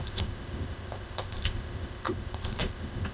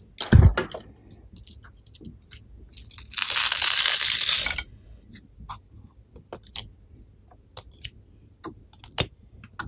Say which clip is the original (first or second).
second